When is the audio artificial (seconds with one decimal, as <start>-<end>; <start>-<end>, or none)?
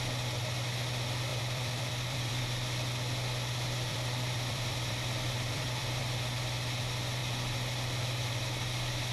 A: 1.3-2.4; 3.9-6.0